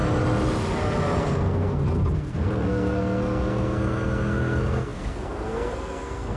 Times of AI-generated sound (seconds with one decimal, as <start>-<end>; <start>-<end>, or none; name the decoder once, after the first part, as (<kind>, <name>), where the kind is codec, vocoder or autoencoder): 1.2-6.4 (codec, SNAC)